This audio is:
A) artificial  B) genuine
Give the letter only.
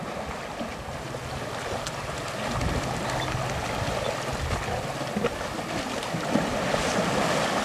B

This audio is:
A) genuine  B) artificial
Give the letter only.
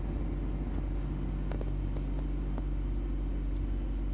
A